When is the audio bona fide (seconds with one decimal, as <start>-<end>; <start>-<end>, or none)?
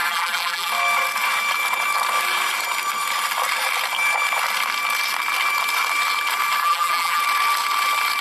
0.7-6.6; 7.2-8.2